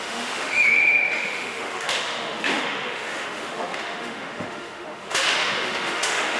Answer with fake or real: fake